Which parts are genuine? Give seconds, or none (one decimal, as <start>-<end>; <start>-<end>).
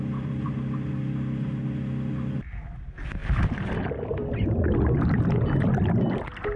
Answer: 0.0-6.6